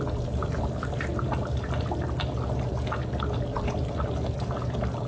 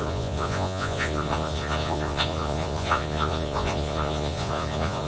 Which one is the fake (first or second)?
second